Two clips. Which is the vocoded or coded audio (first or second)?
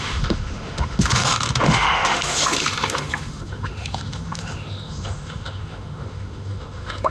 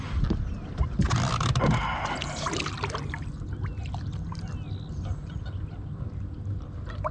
first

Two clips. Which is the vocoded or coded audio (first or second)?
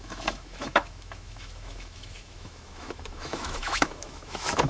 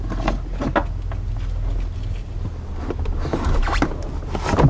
first